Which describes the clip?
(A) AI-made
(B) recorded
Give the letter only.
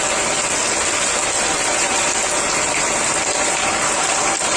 B